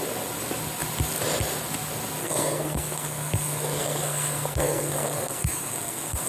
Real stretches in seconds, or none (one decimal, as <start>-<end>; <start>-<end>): 0.0-2.2